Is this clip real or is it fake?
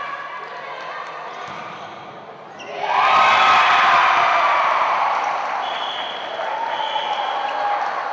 real